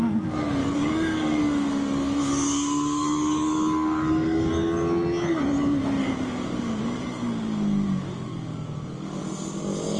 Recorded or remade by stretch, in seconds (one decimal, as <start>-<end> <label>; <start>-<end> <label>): 0.0-0.6 recorded; 0.6-4.5 remade; 4.5-6.0 recorded; 6.0-9.2 remade; 9.2-10.0 recorded